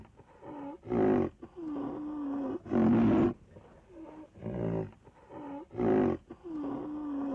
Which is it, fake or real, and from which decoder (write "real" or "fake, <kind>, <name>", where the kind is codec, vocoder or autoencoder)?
real